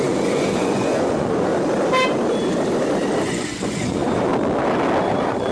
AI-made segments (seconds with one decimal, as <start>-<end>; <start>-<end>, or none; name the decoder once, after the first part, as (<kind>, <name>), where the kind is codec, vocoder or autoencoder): 0.0-1.5 (vocoder, Vocos); 3.2-4.3; 5.0-5.5

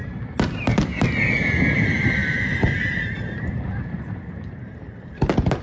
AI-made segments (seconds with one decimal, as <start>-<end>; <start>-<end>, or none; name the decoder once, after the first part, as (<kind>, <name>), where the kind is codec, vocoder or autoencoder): 2.2-4.8 (vocoder, BigVGAN v2)